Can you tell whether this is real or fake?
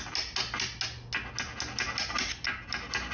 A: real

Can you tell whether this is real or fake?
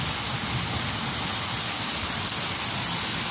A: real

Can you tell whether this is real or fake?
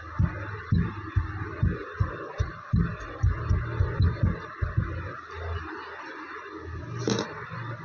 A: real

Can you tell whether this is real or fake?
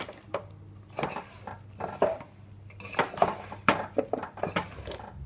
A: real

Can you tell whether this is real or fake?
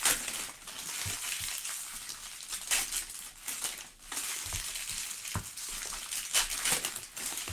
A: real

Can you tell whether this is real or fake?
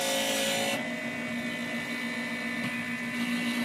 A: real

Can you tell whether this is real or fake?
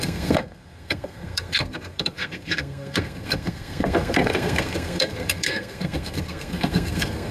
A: fake